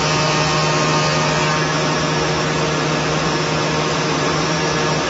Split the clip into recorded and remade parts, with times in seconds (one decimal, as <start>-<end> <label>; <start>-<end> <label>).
0.0-3.9 recorded; 3.9-4.6 remade; 4.6-5.1 recorded